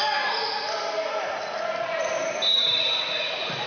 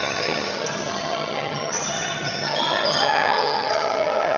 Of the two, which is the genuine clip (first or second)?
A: first